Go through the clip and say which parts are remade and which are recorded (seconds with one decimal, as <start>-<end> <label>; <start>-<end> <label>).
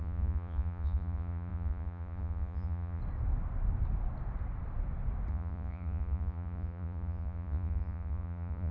0.0-3.0 remade; 3.0-5.3 recorded; 5.3-8.7 remade